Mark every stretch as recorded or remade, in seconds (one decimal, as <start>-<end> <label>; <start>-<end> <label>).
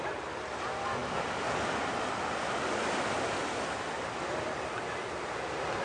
0.0-5.8 recorded